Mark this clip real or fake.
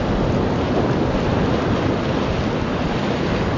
real